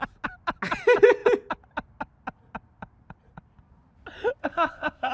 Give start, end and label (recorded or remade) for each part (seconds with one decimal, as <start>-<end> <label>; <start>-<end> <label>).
0.0-4.4 recorded; 4.4-5.1 remade